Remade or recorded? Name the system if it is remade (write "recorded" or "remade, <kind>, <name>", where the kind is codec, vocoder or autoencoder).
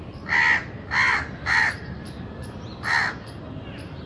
recorded